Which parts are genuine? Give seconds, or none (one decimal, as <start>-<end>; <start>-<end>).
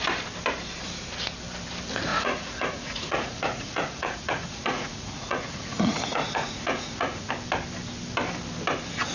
0.0-2.1; 7.3-9.1